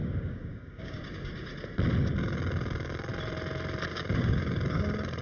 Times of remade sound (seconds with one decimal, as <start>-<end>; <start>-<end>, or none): 0.0-1.5; 2.0-3.1; 3.9-5.2